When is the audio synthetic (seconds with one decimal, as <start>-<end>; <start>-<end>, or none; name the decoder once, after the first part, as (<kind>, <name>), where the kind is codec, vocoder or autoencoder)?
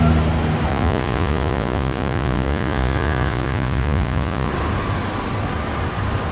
0.7-4.5 (vocoder, Vocos)